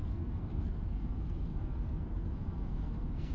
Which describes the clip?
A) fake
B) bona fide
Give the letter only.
A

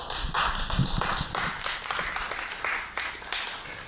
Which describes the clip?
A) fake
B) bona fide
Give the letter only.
B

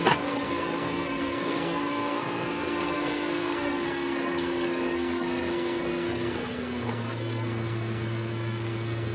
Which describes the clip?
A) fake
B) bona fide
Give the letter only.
A